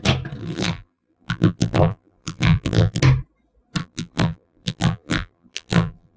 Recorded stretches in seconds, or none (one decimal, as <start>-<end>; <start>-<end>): 0.0-0.4; 3.0-3.8